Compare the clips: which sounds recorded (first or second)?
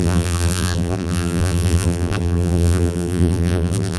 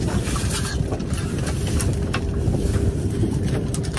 second